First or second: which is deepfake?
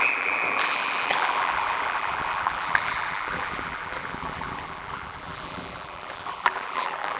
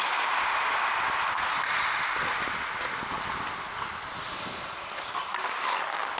first